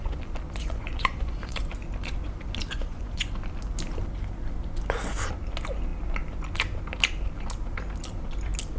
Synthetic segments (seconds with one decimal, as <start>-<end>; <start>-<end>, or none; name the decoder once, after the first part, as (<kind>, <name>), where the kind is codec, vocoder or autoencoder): 0.6-1.6 (vocoder, Vocos); 2.7-3.3